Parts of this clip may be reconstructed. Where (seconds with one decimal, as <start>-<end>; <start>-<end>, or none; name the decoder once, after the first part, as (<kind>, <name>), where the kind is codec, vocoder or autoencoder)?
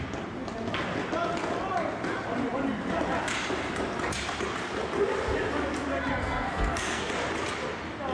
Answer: 6.2-7.1 (codec, SNAC)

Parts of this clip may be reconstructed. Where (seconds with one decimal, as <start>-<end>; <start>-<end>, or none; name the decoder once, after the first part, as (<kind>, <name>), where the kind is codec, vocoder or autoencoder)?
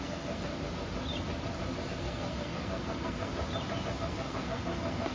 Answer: 0.0-0.5 (codec, SNAC); 1.9-3.3; 3.9-5.1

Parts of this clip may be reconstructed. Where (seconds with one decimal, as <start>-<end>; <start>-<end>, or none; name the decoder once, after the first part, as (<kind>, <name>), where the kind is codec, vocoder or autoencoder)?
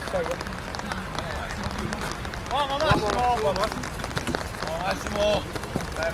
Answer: none